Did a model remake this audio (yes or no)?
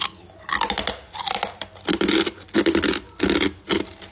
no